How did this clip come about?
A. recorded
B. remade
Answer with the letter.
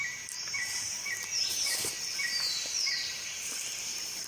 B